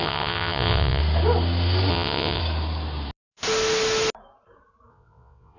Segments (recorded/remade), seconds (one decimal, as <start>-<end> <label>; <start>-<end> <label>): 0.0-1.0 remade; 1.0-1.9 recorded; 1.9-2.4 remade; 2.4-4.9 recorded; 4.9-5.6 remade